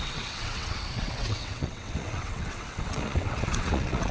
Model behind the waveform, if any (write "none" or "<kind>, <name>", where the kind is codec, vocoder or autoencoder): vocoder, WaveNeXt